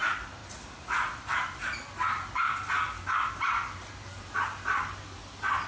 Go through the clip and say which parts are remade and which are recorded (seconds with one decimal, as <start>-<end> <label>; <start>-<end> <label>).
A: 0.0-5.7 recorded